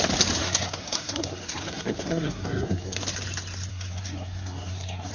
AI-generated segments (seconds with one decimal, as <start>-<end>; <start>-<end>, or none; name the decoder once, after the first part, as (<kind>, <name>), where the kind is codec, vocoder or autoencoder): 0.4-3.0 (codec, SNAC); 3.7-5.1